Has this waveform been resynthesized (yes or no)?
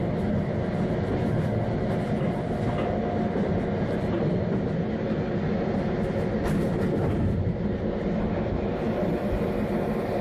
no